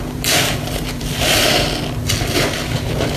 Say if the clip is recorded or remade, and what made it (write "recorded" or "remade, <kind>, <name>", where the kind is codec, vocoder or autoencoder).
remade, vocoder, BigVGAN v2